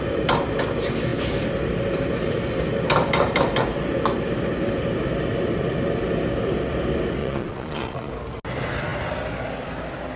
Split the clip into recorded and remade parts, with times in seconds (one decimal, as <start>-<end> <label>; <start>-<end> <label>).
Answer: 0.0-7.2 recorded; 7.2-8.1 remade; 8.1-10.2 recorded